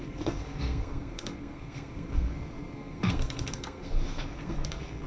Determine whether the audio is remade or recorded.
remade